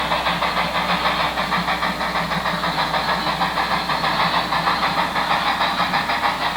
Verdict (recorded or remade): recorded